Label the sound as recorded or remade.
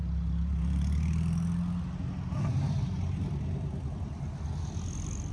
recorded